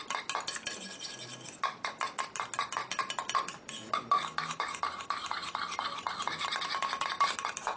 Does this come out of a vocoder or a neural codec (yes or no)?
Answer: no